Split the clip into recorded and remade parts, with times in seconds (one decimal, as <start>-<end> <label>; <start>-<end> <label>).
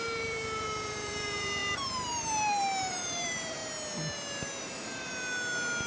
0.0-3.6 remade; 3.6-4.6 recorded; 4.6-5.1 remade; 5.1-5.9 recorded